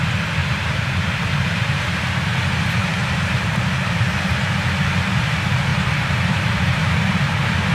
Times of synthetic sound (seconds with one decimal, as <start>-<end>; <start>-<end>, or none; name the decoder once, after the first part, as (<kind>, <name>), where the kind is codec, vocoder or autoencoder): 0.4-2.0 (vocoder, BigVGAN v2); 2.9-4.5; 5.7-7.3